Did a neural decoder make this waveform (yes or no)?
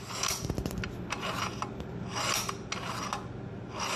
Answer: no